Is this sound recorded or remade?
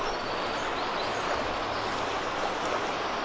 recorded